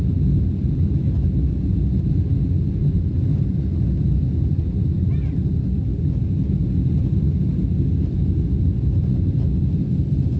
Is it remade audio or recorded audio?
recorded